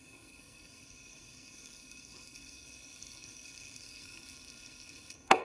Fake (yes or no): yes